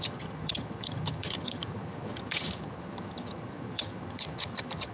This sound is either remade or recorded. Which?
remade